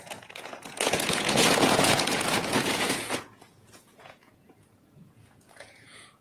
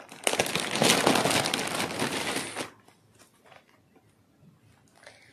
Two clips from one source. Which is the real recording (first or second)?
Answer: second